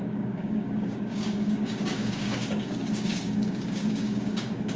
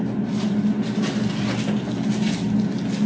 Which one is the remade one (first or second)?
first